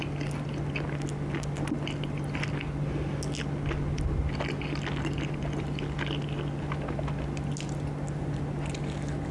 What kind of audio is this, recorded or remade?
recorded